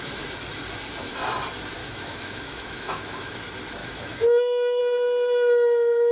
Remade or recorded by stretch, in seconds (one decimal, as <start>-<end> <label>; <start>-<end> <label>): 0.0-1.8 recorded; 1.8-3.4 remade; 3.4-3.8 recorded; 3.8-4.8 remade; 4.8-6.1 recorded